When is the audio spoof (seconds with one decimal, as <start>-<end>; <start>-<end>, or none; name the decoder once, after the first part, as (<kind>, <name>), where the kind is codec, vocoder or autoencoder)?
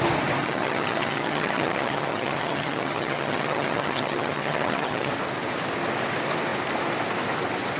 0.4-5.1 (vocoder, HiFi-GAN)